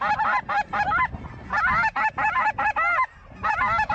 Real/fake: real